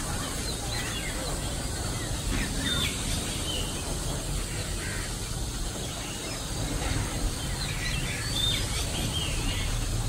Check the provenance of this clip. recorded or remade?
recorded